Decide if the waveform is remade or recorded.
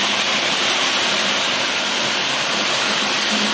remade